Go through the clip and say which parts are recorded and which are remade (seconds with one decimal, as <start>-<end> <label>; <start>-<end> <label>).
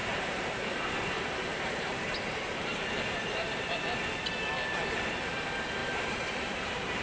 0.0-4.2 remade; 4.2-5.8 recorded; 5.8-7.0 remade